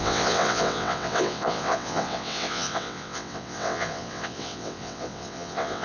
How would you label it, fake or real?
fake